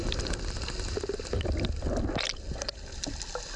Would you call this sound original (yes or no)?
yes